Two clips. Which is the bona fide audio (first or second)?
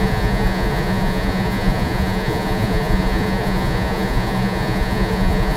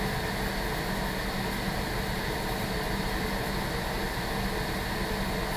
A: second